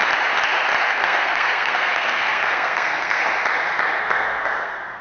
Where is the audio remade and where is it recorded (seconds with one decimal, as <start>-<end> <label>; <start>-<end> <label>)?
0.0-0.8 recorded; 0.8-3.2 remade; 3.2-4.0 recorded; 4.0-5.0 remade